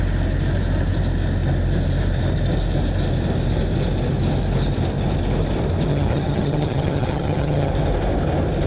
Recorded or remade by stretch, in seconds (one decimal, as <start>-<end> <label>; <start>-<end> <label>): 0.0-5.9 recorded; 5.9-7.7 remade; 7.7-8.7 recorded